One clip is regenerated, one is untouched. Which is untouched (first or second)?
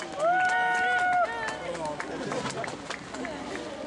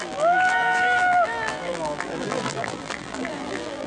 first